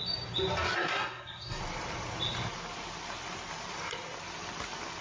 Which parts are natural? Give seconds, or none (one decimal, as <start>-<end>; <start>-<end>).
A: 0.0-0.8; 1.6-5.0